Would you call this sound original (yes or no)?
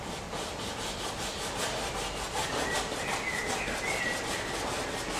yes